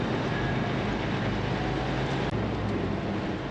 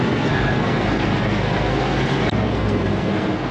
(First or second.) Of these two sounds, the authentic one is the first